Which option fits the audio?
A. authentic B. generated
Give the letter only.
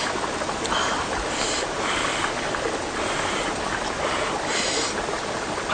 A